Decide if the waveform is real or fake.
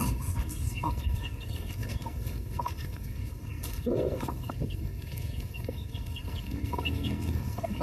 fake